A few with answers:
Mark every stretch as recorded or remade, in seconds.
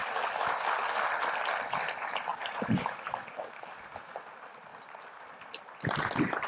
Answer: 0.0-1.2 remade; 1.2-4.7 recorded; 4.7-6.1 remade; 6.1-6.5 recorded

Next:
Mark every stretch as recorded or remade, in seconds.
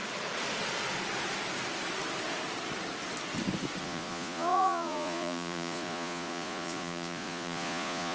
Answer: 0.0-3.8 recorded; 3.8-8.1 remade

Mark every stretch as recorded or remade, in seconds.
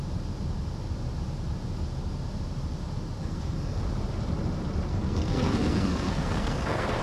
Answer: 0.0-3.2 recorded; 3.2-3.8 remade; 3.8-4.9 recorded; 4.9-7.0 remade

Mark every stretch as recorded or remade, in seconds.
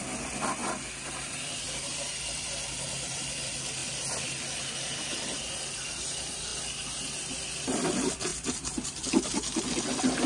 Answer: 0.0-3.8 remade; 3.8-5.9 recorded; 5.9-10.3 remade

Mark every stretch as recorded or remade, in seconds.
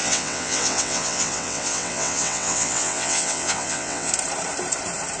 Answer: 0.0-4.1 remade; 4.1-5.2 recorded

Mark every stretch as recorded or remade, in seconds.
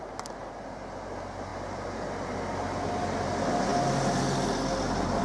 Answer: 0.0-5.2 recorded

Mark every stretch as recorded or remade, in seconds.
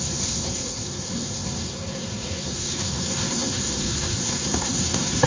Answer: 0.0-5.3 remade